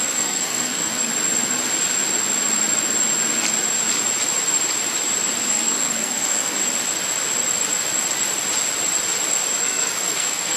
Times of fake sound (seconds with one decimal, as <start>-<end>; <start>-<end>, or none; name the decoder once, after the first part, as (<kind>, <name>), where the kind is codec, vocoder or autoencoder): 0.0-1.1 (codec, SNAC); 5.5-6.6; 9.6-10.6